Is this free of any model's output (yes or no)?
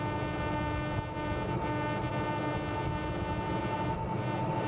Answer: yes